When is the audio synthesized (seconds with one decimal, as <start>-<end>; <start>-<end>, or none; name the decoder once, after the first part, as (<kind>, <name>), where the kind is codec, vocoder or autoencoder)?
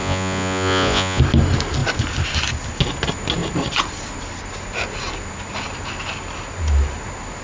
0.0-1.2 (vocoder, Vocos)